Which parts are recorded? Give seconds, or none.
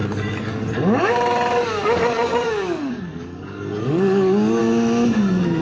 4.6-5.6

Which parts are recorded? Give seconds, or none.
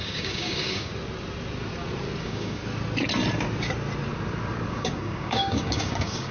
0.9-2.2; 2.6-4.7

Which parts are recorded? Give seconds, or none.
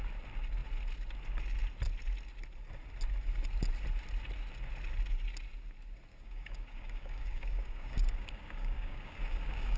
0.0-6.1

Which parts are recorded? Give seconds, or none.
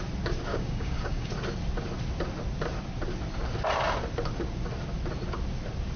0.0-0.5; 1.3-6.0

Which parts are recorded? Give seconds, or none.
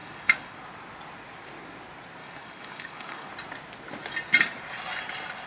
0.6-2.2; 3.3-5.5